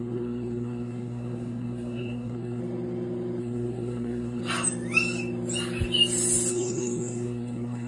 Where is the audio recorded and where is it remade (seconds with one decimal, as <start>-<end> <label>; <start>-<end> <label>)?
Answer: 0.0-2.6 remade; 2.6-3.4 recorded; 3.4-4.4 remade; 4.4-6.5 recorded; 6.5-7.9 remade